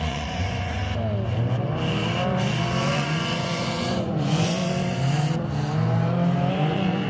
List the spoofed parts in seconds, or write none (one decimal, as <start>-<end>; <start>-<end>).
0.0-0.8; 2.9-4.6; 6.5-7.1